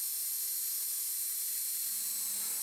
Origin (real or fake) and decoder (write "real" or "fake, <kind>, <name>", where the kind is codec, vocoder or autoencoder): real